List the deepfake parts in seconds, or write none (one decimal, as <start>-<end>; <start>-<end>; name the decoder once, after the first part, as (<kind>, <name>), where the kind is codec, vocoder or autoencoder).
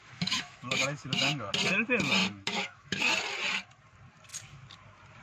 0.0-1.5 (autoencoder, DAC-VAE); 2.2-3.0